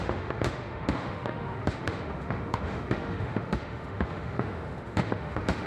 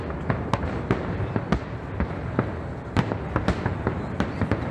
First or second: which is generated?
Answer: first